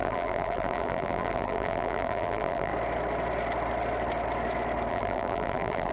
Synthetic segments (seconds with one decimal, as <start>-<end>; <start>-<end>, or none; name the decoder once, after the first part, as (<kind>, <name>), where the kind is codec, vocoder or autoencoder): 0.0-2.7 (vocoder, BigVGAN v2); 4.9-5.9